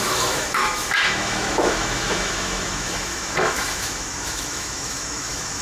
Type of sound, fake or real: fake